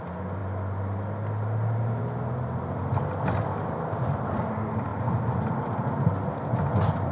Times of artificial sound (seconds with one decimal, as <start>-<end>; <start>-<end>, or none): none